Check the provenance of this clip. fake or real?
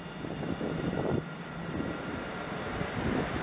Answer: fake